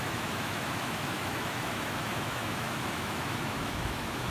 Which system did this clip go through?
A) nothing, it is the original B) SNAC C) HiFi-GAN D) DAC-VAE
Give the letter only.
D